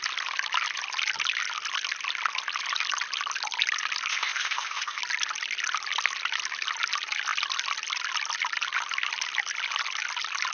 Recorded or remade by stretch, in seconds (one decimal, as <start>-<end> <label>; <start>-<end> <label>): 0.0-4.1 recorded; 4.1-5.0 remade; 5.0-10.5 recorded